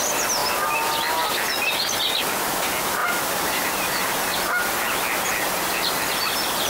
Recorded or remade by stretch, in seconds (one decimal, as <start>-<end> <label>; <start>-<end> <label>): 0.0-3.0 recorded; 3.0-4.4 remade; 4.4-6.7 recorded